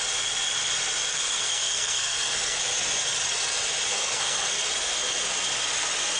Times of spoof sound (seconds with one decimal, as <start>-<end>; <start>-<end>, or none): 1.1-2.6; 3.9-4.7